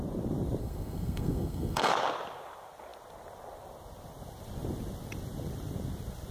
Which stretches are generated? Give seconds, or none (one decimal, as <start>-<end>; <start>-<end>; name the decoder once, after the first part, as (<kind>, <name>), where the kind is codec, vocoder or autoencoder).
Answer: 0.6-1.9 (codec, SNAC)